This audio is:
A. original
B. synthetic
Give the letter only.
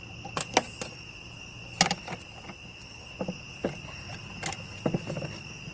A